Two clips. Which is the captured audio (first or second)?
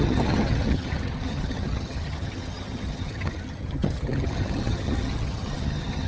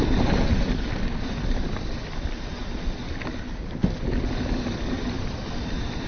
second